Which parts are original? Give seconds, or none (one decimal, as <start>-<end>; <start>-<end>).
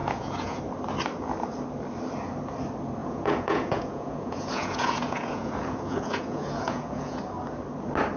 0.6-3.0; 7.2-8.2